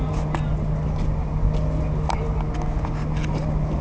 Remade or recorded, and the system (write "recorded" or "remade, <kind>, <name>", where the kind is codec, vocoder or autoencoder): recorded